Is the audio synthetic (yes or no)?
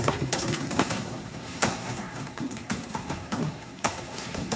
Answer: yes